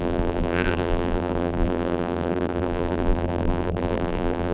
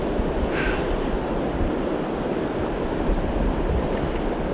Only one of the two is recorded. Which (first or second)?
second